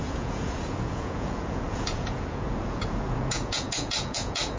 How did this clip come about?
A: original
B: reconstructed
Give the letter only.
B